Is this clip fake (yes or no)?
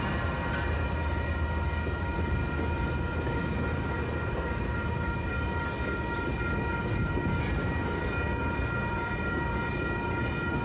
no